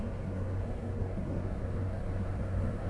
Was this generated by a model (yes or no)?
yes